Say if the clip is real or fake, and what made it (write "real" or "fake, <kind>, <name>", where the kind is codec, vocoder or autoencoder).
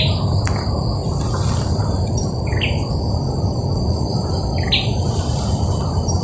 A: real